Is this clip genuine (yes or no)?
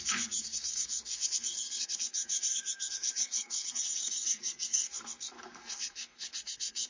no